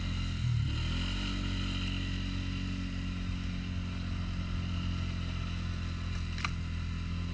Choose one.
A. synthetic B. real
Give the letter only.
B